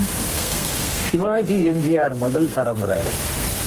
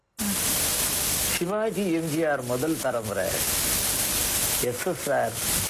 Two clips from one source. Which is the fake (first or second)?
first